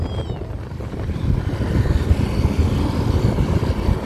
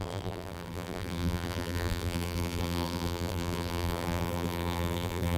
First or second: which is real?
first